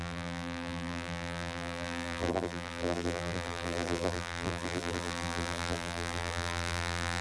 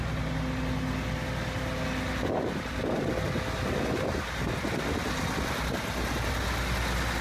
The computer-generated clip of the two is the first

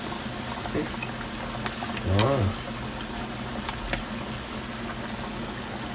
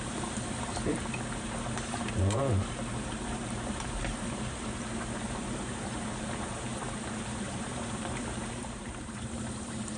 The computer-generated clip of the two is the second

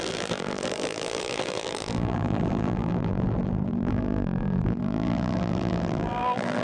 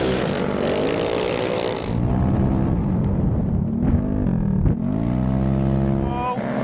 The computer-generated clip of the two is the first